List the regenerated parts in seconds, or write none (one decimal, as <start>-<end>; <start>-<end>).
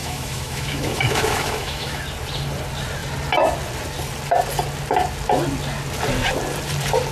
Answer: 0.0-2.0